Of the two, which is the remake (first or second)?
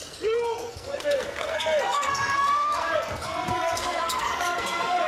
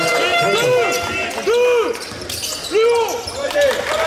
first